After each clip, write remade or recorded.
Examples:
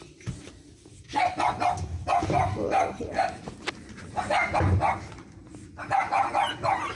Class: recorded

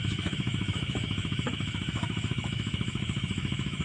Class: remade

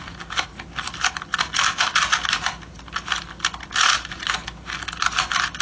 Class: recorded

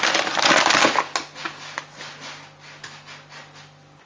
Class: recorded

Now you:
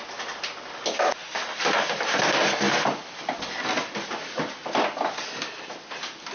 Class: recorded